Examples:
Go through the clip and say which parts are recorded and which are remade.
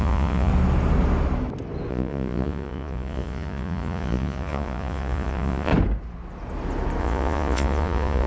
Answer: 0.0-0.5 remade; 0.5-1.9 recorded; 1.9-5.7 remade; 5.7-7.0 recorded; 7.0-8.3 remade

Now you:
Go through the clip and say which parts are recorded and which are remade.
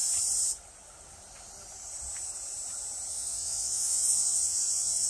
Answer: 0.0-3.1 recorded; 3.1-5.1 remade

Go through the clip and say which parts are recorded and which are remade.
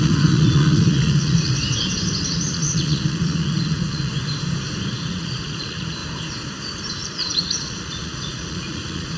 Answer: 0.0-1.5 remade; 1.5-2.3 recorded; 2.3-4.1 remade; 4.1-4.9 recorded; 4.9-6.0 remade; 6.0-6.8 recorded; 6.8-9.2 remade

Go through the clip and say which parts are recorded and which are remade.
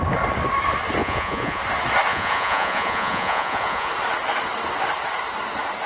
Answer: 0.0-1.0 recorded; 1.0-1.6 remade; 1.6-2.1 recorded; 2.1-3.9 remade; 3.9-5.9 recorded